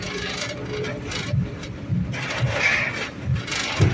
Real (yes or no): yes